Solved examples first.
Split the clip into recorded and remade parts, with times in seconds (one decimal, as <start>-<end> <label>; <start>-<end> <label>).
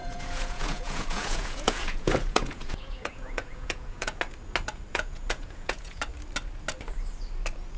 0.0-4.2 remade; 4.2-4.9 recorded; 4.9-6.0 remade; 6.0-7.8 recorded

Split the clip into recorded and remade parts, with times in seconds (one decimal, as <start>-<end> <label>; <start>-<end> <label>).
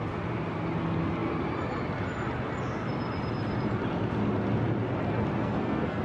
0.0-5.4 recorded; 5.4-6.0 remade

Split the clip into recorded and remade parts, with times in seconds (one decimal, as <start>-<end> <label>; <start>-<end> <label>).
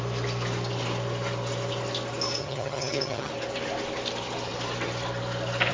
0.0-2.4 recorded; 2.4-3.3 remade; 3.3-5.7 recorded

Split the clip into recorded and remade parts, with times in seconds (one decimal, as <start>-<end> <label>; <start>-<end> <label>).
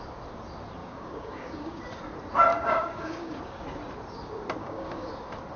0.0-0.8 recorded; 0.8-1.8 remade; 1.8-2.5 recorded; 2.5-3.6 remade; 3.6-4.6 recorded; 4.6-5.1 remade; 5.1-5.6 recorded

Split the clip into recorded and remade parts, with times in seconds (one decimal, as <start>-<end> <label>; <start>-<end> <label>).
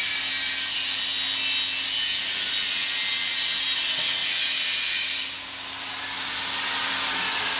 0.0-7.6 recorded